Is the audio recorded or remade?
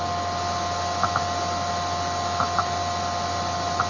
recorded